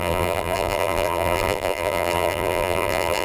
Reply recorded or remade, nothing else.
remade